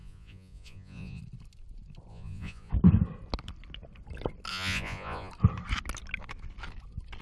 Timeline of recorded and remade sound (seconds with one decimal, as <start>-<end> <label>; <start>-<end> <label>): 0.0-1.2 remade; 1.2-2.1 recorded; 2.1-2.7 remade; 2.7-4.5 recorded; 4.5-5.3 remade; 5.3-7.2 recorded